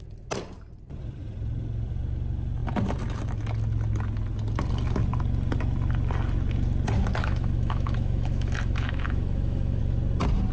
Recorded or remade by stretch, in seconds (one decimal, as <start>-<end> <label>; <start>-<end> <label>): 0.0-7.2 recorded; 7.2-9.8 remade; 9.8-10.5 recorded